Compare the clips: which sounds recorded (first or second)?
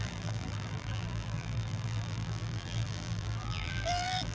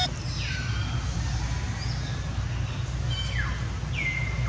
second